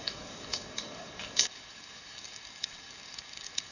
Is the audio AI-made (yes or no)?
yes